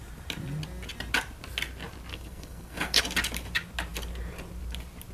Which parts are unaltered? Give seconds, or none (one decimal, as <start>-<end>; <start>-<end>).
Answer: 0.0-2.1; 3.0-5.1